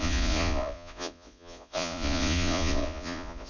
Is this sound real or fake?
fake